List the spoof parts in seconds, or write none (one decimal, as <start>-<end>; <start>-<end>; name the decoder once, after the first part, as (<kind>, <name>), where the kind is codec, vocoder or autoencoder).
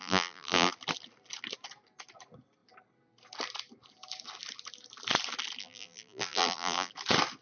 0.0-0.7 (vocoder, BigVGAN v2); 5.6-6.9